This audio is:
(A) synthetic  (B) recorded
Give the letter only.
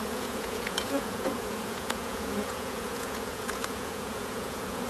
A